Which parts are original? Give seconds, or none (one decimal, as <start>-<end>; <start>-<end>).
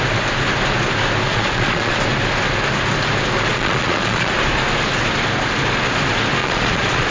0.0-1.3; 2.0-3.5; 4.3-6.4